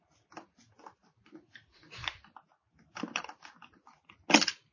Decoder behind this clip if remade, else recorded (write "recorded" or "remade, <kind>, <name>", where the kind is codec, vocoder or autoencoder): recorded